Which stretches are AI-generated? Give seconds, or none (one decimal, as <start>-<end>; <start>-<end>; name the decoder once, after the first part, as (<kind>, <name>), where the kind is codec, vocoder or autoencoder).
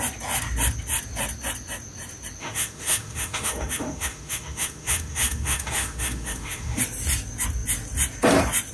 2.4-6.8 (autoencoder, DAC-VAE)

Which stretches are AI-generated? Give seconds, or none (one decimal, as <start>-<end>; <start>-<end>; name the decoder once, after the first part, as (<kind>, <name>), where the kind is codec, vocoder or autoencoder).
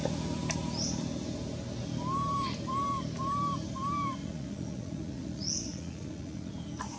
4.2-6.5 (vocoder, Vocos)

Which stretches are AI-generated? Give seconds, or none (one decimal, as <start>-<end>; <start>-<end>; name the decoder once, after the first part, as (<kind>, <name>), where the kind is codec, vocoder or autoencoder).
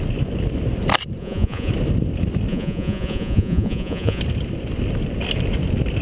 1.2-1.7 (vocoder, Vocos); 2.5-4.2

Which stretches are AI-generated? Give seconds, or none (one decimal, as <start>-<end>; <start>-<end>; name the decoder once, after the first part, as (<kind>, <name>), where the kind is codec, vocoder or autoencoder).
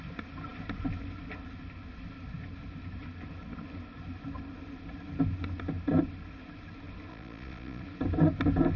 7.1-7.8 (vocoder, Vocos)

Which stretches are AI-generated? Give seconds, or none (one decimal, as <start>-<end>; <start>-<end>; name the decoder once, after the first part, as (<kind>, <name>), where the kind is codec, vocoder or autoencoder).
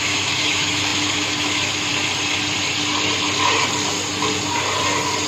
0.0-1.9 (autoencoder, DAC-VAE)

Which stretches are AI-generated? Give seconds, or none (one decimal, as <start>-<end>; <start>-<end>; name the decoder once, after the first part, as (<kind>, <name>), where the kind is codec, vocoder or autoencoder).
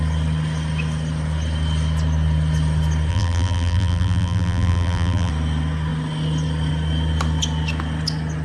3.1-5.3 (vocoder, BigVGAN v2)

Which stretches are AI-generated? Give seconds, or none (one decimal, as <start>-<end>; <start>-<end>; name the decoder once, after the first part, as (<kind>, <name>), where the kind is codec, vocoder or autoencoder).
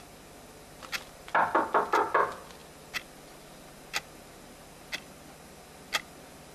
none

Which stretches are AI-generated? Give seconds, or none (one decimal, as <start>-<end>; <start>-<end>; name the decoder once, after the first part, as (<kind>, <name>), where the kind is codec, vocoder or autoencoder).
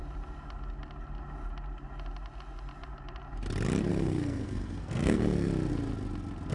3.9-5.5 (codec, SNAC)